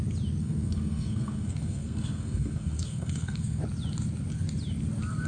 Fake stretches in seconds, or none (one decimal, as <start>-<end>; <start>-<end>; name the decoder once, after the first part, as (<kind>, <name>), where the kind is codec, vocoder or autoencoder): 0.4-3.6 (codec, SNAC)